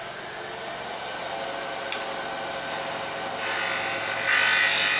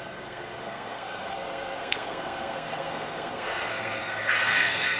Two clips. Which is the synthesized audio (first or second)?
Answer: second